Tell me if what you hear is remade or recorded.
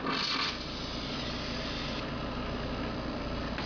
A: recorded